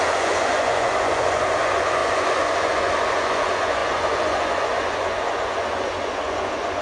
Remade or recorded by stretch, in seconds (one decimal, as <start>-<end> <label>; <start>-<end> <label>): 0.0-6.8 remade